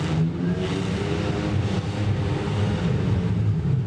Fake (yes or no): no